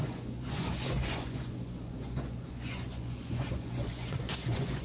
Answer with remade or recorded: remade